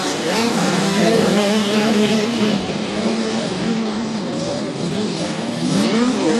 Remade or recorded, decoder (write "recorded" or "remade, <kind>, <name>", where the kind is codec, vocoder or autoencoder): remade, codec, DAC